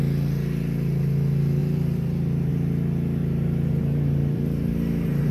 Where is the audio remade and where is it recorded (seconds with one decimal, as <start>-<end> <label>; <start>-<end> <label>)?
0.0-1.6 recorded; 1.6-2.5 remade; 2.5-3.2 recorded; 3.2-5.3 remade